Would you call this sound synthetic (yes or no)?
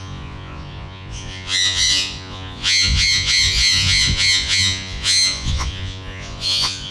yes